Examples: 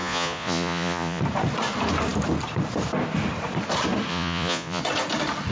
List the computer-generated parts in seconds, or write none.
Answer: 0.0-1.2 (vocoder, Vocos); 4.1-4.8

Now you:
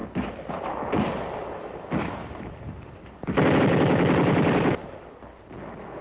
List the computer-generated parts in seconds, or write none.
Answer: none

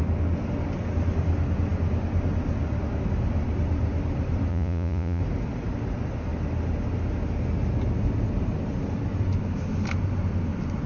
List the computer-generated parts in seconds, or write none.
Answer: 4.5-5.2 (vocoder, Vocos)